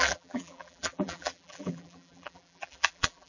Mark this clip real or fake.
fake